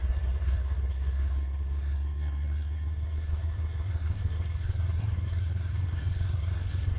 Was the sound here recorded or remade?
remade